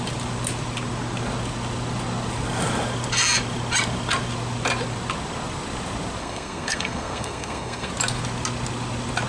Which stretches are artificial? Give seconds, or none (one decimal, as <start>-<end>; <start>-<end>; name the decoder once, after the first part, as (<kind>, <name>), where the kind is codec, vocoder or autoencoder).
6.2-7.9 (codec, SNAC)